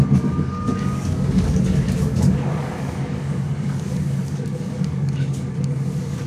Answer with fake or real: fake